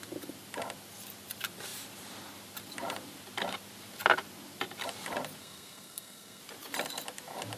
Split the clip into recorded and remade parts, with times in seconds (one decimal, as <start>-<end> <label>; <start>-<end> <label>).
0.0-5.4 recorded; 5.4-6.4 remade; 6.4-7.6 recorded